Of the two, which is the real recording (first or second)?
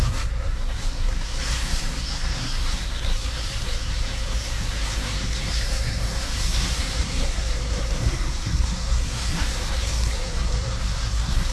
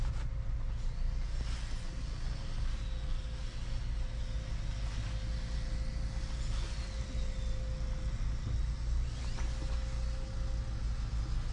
second